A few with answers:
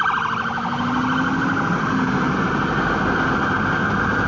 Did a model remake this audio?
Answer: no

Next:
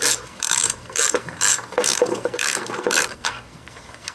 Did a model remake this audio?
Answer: yes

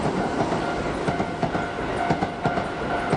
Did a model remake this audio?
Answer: no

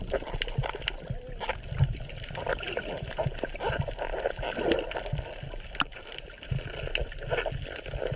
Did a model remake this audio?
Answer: no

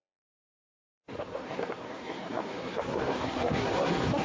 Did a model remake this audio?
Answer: yes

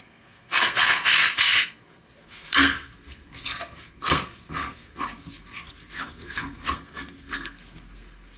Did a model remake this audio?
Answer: yes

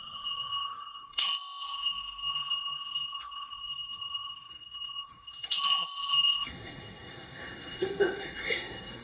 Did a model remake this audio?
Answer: yes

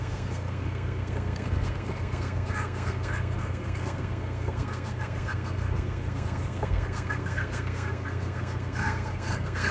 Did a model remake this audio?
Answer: yes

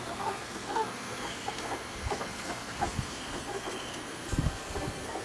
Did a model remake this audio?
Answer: yes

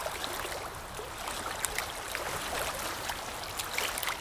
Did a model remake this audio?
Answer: no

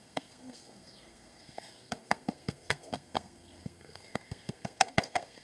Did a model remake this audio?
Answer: yes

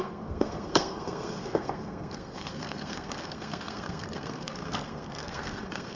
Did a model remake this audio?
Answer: yes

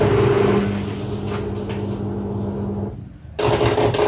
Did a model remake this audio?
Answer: no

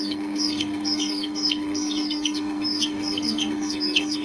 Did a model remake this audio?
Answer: yes